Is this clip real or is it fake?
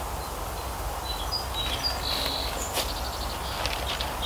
real